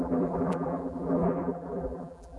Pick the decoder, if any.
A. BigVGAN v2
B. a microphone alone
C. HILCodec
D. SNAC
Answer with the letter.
A